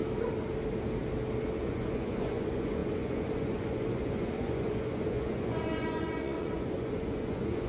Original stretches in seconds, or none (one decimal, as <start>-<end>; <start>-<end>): 0.0-1.6